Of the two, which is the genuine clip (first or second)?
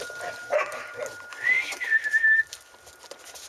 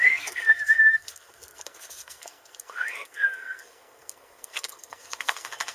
first